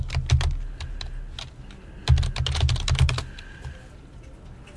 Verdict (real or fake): real